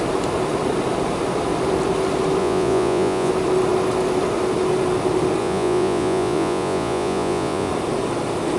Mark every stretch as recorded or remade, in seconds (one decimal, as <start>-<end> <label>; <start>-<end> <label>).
0.0-2.4 recorded; 2.4-3.3 remade; 3.3-5.4 recorded; 5.4-7.7 remade; 7.7-8.6 recorded